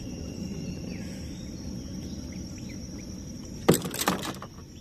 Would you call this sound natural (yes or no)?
yes